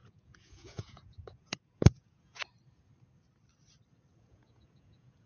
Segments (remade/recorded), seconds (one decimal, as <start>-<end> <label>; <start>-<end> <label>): 0.0-2.4 remade; 2.4-4.2 recorded; 4.2-5.3 remade